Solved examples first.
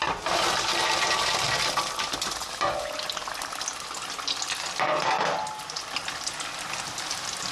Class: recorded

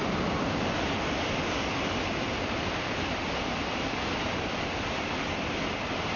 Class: recorded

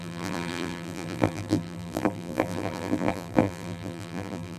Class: remade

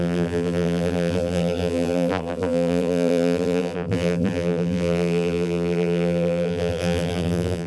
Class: remade